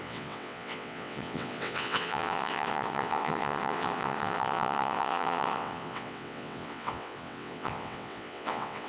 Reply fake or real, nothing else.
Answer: fake